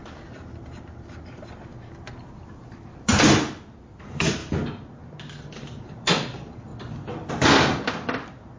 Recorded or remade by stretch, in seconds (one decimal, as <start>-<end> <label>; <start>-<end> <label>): 0.0-4.4 remade; 4.4-5.8 recorded; 5.8-6.7 remade; 6.7-7.3 recorded; 7.3-8.6 remade